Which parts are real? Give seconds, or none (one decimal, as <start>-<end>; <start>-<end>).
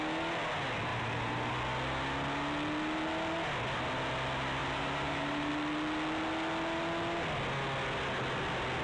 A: 0.0-0.9; 1.5-4.6; 5.5-8.8